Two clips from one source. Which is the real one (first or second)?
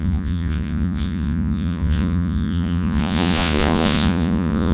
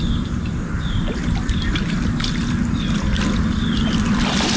second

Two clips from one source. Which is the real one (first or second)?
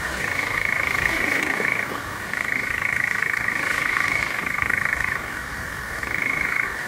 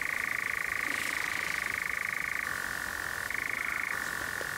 second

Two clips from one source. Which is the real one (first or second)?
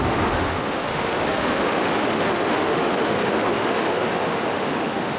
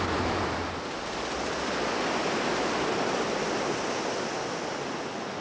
second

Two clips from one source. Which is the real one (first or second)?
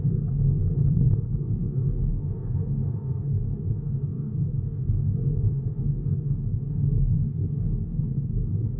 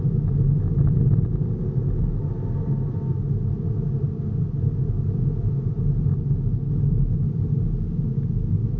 second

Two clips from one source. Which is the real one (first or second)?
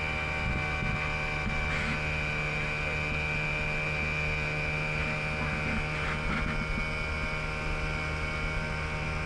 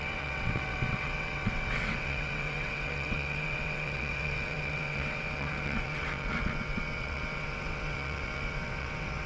first